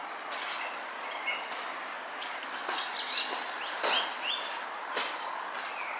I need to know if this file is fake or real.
real